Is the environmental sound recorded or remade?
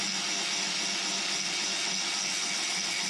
recorded